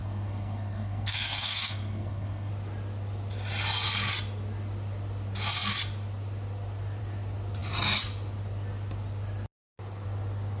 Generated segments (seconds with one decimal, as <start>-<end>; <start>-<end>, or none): 0.0-2.5